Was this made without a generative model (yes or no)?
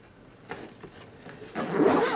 yes